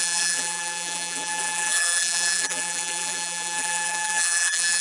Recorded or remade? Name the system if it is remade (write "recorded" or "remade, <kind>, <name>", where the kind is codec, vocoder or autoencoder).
remade, vocoder, BigVGAN v2